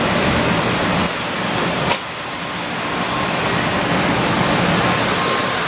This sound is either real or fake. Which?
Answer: real